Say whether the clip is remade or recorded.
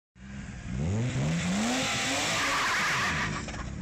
recorded